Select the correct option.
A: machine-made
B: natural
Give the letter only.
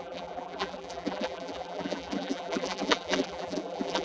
A